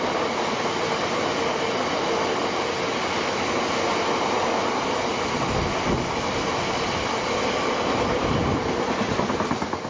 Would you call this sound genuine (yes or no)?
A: yes